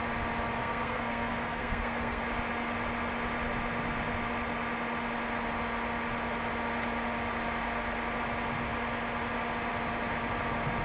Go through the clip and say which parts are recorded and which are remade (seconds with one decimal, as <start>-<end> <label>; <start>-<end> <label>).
0.0-0.6 recorded; 0.6-2.2 remade; 2.2-10.8 recorded